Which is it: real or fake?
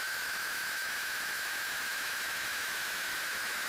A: fake